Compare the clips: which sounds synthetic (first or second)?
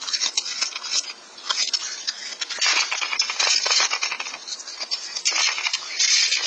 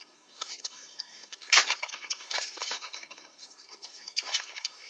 second